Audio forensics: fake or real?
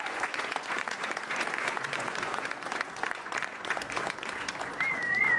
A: fake